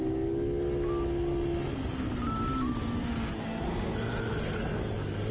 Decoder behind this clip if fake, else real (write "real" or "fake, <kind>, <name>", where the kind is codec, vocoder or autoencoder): real